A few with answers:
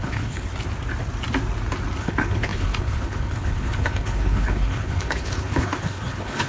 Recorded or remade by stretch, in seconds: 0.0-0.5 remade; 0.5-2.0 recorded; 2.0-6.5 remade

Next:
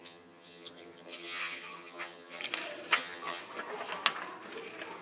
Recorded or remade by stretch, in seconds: 0.0-2.4 remade; 2.4-2.9 recorded; 2.9-3.4 remade; 3.4-5.0 recorded

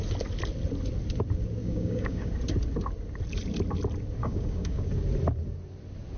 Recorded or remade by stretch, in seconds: 0.0-1.6 recorded; 1.6-2.3 remade; 2.3-4.2 recorded; 4.2-4.9 remade; 4.9-6.2 recorded

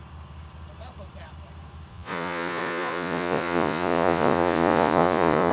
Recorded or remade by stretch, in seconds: 0.0-1.9 recorded; 1.9-5.5 remade

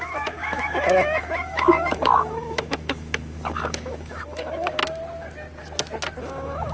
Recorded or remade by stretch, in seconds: 0.0-4.8 remade; 4.8-6.2 recorded; 6.2-6.7 remade

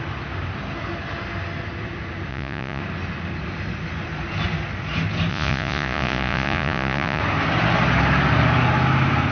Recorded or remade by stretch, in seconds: 0.0-2.3 recorded; 2.3-2.8 remade; 2.8-5.3 recorded; 5.3-7.2 remade; 7.2-9.3 recorded

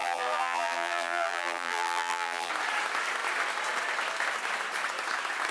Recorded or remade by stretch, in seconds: 0.0-2.5 remade; 2.5-5.5 recorded

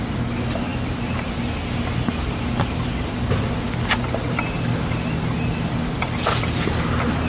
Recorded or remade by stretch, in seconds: 0.0-7.3 recorded